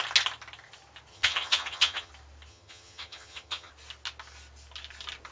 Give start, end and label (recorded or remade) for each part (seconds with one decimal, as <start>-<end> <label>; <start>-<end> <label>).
0.0-1.1 recorded; 1.1-2.1 remade; 2.1-2.5 recorded; 2.5-3.7 remade; 3.7-5.3 recorded